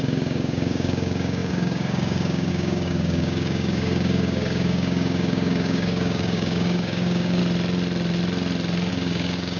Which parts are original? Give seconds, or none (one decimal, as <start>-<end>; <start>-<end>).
7.4-8.9